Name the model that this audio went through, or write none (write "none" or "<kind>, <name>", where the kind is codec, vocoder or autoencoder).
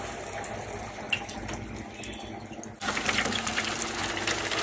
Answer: none